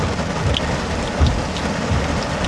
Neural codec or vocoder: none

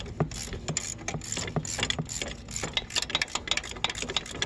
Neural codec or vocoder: none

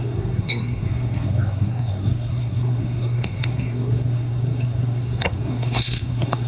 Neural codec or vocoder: codec, SNAC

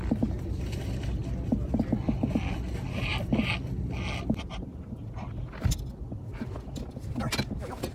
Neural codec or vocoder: none